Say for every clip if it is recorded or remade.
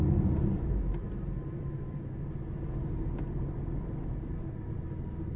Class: recorded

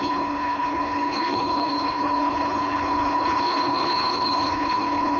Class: remade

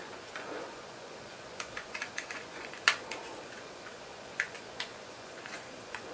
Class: remade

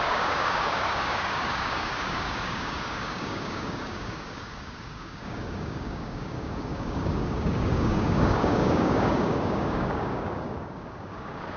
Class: remade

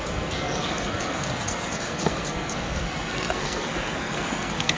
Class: remade